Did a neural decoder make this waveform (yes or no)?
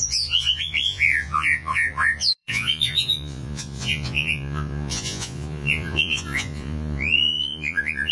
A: yes